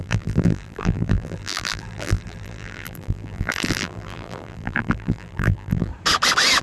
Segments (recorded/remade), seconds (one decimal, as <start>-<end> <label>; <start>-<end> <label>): 0.0-5.9 remade; 5.9-6.6 recorded